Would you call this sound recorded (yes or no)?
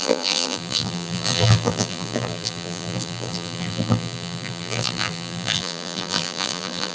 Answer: no